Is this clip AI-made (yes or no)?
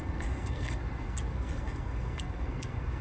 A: yes